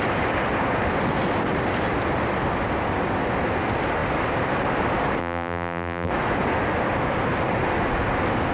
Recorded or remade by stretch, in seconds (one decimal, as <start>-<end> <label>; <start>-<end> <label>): 0.0-5.2 recorded; 5.2-6.1 remade; 6.1-8.5 recorded